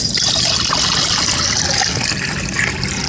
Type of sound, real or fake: real